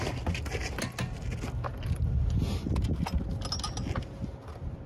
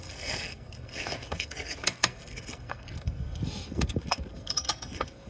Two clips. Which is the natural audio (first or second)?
first